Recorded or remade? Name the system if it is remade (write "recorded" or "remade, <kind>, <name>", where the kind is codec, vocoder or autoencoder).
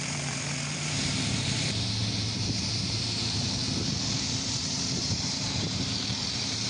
remade, vocoder, BigVGAN v2